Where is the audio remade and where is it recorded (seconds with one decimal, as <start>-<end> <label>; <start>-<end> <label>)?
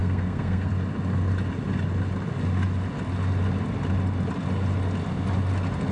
0.0-0.7 remade; 0.7-5.9 recorded